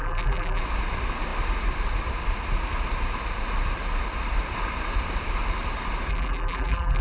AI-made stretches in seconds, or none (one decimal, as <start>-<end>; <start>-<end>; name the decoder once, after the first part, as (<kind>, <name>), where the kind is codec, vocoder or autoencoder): 0.0-0.6 (vocoder, BigVGAN v2); 6.1-7.0